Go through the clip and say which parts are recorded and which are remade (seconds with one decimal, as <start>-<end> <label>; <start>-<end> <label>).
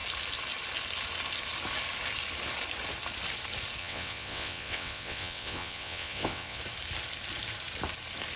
0.0-3.8 recorded; 3.8-6.6 remade; 6.6-8.4 recorded